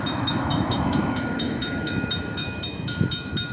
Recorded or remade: remade